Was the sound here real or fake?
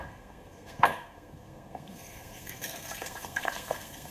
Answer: fake